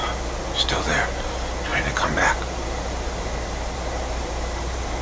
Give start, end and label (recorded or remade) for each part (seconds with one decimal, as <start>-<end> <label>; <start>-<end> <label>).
0.0-1.7 recorded; 1.7-5.0 remade